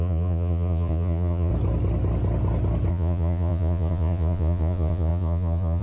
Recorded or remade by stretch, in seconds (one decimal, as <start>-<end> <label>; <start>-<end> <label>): 0.0-1.5 remade; 1.5-2.9 recorded; 2.9-5.8 remade